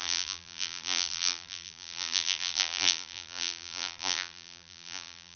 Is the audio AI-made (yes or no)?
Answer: yes